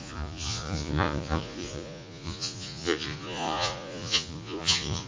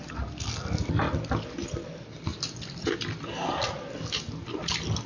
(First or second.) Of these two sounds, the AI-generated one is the first